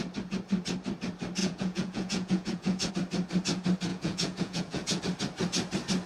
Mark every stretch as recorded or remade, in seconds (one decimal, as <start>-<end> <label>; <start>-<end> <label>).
0.0-1.4 recorded; 1.4-2.9 remade; 2.9-3.9 recorded; 3.9-5.0 remade; 5.0-6.1 recorded